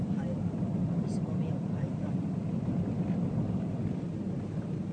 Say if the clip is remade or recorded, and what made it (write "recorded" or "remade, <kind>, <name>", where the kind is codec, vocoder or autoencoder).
recorded